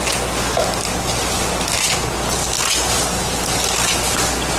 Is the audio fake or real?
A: real